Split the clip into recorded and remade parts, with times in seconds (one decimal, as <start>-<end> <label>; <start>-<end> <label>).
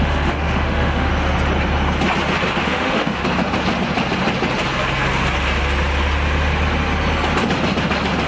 0.0-1.1 remade; 1.1-2.6 recorded; 2.6-3.2 remade; 3.2-8.3 recorded